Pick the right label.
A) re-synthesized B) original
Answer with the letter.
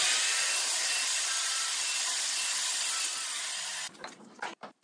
B